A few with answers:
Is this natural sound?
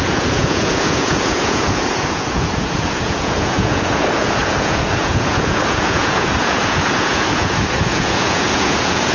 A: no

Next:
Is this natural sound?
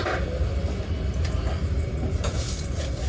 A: yes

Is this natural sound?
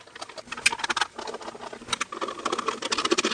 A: yes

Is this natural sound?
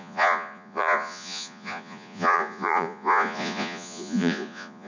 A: no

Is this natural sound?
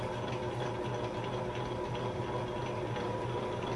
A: yes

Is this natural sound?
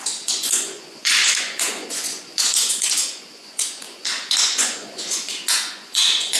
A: no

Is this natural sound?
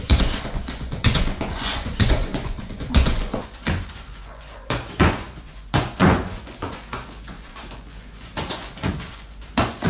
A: no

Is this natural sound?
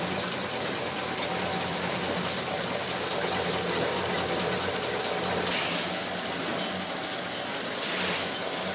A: yes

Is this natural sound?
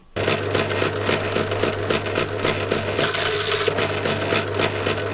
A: yes